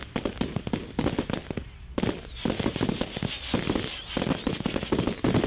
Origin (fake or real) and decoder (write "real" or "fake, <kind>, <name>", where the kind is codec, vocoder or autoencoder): real